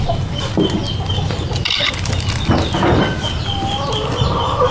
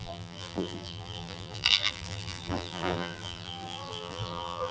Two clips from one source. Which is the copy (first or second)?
second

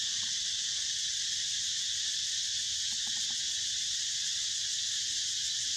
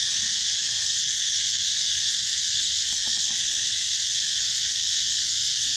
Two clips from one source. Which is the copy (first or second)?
second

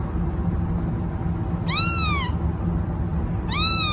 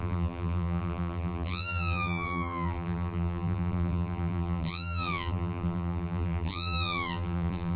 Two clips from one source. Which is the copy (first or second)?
second